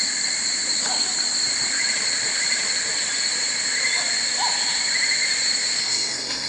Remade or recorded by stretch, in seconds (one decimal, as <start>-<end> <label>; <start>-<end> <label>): 0.0-5.8 recorded; 5.8-6.5 remade